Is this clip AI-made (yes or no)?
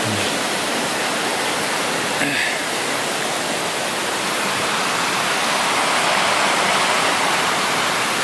no